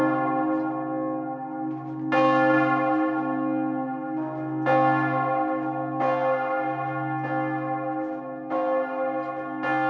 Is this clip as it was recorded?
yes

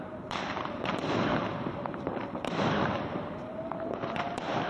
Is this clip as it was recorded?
no